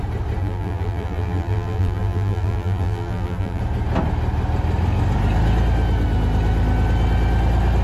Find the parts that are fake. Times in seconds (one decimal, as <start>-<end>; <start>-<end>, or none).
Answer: 0.4-3.6